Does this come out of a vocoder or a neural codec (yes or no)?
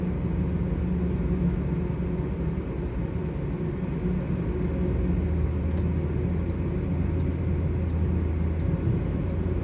no